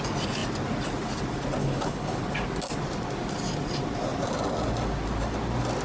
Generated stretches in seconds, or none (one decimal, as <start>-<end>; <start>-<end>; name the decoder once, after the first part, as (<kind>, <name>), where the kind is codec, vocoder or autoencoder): 1.6-2.2 (codec, HILCodec)